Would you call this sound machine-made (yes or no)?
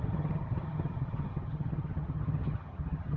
yes